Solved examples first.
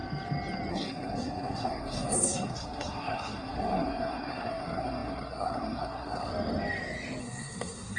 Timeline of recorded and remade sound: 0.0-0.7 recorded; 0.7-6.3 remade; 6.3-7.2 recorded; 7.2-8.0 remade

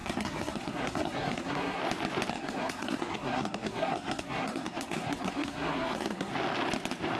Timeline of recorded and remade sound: 0.0-1.8 remade; 1.8-2.3 recorded; 2.3-6.3 remade; 6.3-7.2 recorded